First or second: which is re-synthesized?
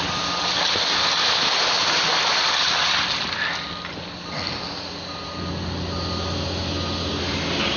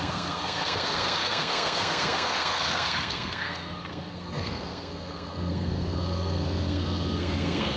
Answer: second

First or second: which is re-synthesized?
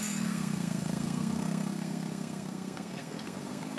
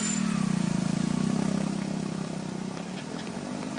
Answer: first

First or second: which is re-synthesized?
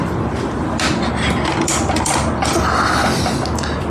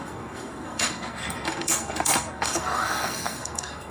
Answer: second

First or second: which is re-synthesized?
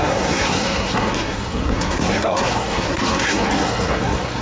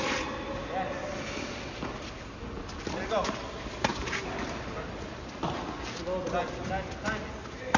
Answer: first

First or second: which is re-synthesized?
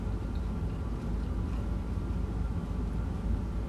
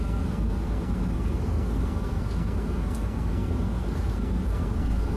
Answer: second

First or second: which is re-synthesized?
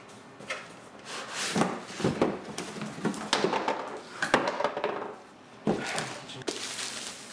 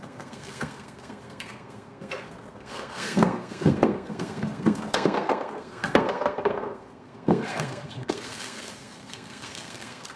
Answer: second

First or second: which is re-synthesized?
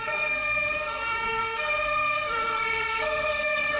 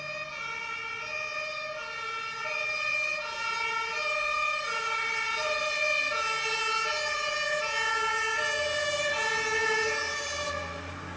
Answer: first